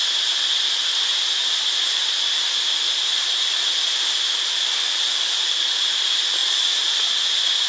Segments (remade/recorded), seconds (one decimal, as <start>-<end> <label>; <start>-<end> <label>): 0.0-7.7 recorded